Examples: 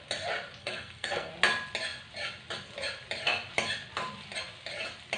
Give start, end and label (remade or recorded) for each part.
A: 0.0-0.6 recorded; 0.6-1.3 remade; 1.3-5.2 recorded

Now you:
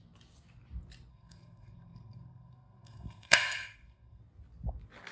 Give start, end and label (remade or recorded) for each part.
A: 0.0-1.1 recorded; 1.1-4.2 remade; 4.2-5.1 recorded

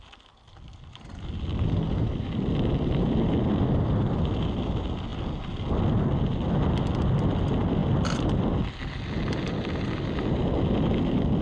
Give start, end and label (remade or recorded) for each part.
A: 0.0-11.4 recorded

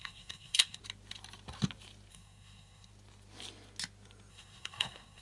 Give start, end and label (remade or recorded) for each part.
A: 0.0-0.8 remade; 0.8-2.1 recorded; 2.1-2.9 remade; 2.9-4.3 recorded; 4.3-5.2 remade

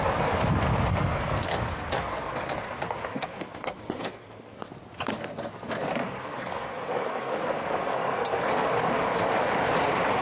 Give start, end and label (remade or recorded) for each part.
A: 0.0-0.9 recorded; 0.9-4.7 remade; 4.7-6.0 recorded; 6.0-8.5 remade; 8.5-10.2 recorded